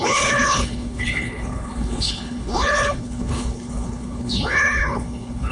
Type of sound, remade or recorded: remade